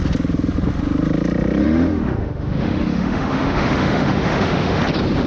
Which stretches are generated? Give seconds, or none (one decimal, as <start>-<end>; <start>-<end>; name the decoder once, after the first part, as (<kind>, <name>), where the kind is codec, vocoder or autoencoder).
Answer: 1.6-4.8 (autoencoder, DAC-VAE)